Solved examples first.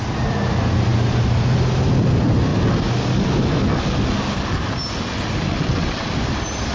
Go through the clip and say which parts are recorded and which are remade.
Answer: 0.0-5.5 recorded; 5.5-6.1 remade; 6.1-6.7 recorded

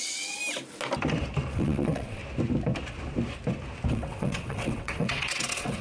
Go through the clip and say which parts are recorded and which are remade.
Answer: 0.0-0.4 remade; 0.4-1.5 recorded; 1.5-2.2 remade; 2.2-3.9 recorded; 3.9-5.8 remade